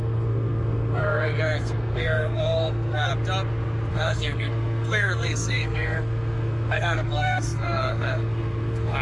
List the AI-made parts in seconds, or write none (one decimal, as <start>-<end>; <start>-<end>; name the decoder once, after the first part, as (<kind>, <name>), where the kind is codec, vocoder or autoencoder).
0.0-3.1 (codec, SNAC); 3.9-9.0

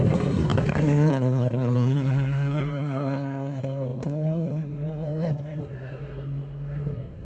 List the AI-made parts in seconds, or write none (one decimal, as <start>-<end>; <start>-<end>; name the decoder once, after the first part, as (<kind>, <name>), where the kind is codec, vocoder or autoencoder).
0.0-7.2 (codec, SNAC)

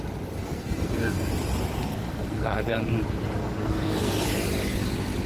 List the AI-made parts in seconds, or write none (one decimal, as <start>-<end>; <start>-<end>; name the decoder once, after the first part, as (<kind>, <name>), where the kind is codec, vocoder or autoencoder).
0.4-1.3 (codec, SNAC); 1.8-2.9; 3.4-4.3

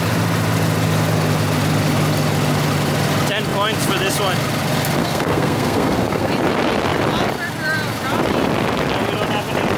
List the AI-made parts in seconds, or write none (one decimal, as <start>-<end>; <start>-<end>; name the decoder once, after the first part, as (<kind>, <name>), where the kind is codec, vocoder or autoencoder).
5.0-6.3 (codec, SNAC)